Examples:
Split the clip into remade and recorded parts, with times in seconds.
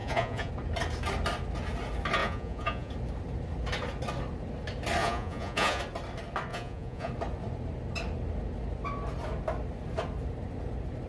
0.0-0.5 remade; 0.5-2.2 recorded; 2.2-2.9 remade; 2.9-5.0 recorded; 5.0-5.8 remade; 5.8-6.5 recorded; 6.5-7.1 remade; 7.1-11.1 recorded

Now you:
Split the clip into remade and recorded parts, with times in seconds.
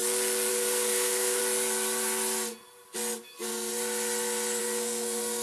0.0-0.5 recorded; 0.5-1.4 remade; 1.4-4.6 recorded; 4.6-5.4 remade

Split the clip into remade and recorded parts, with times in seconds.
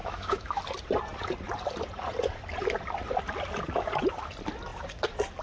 0.0-0.6 remade; 0.6-5.4 recorded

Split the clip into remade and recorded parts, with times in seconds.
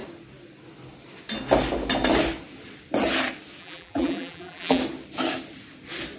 0.0-3.6 recorded; 3.6-4.8 remade; 4.8-6.2 recorded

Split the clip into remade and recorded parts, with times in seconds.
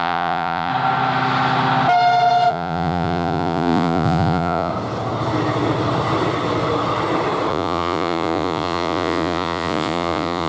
0.0-0.7 remade; 0.7-2.5 recorded; 2.5-4.7 remade; 4.7-7.5 recorded; 7.5-10.5 remade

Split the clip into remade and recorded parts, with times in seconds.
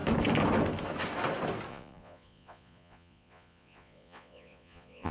0.0-1.7 recorded; 1.7-5.1 remade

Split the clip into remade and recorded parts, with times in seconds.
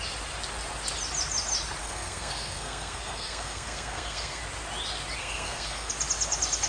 0.0-1.8 recorded; 1.8-4.4 remade; 4.4-5.2 recorded; 5.2-5.9 remade; 5.9-6.7 recorded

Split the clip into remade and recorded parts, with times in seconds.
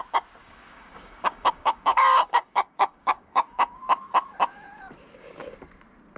0.0-0.4 recorded; 0.4-3.8 remade; 3.8-6.2 recorded